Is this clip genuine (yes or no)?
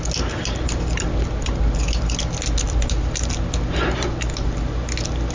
yes